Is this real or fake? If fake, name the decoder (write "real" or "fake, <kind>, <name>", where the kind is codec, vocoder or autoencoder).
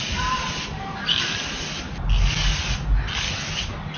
real